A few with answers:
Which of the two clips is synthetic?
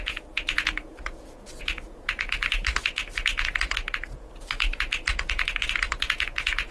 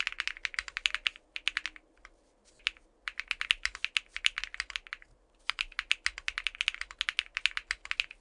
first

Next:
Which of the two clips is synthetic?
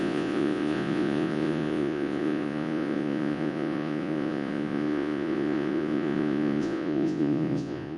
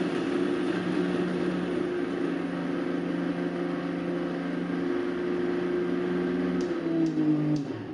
first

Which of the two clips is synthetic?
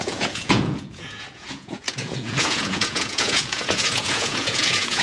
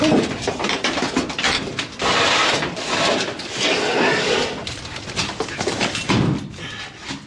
first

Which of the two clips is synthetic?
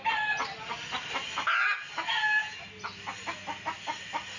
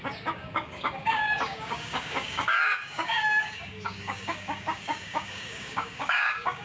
second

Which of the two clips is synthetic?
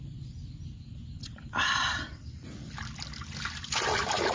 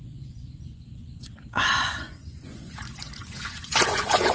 second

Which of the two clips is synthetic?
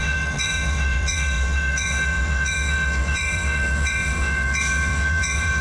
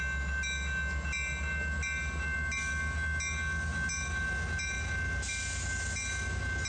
first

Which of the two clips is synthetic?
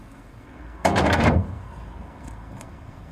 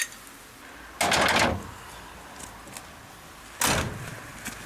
first